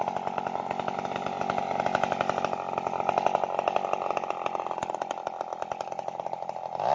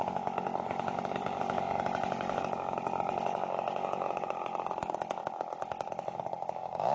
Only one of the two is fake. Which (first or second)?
second